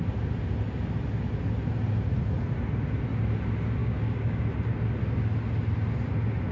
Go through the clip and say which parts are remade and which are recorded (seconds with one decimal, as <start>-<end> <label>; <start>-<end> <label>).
0.0-3.8 recorded; 3.8-4.4 remade; 4.4-6.5 recorded